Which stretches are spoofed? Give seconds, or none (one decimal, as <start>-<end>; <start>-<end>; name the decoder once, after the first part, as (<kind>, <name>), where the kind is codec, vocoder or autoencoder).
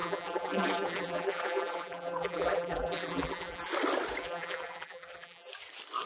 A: 0.0-3.7 (vocoder, BigVGAN v2); 4.2-5.5